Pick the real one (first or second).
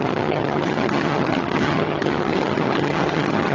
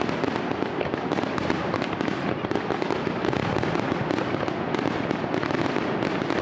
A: second